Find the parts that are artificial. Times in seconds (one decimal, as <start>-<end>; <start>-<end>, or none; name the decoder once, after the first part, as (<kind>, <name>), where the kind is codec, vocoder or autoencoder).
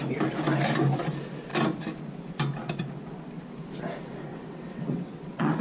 4.3-5.6 (vocoder, WaveNeXt)